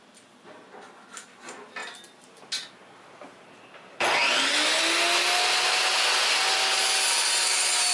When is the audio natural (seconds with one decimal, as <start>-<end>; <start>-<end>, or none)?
0.0-7.9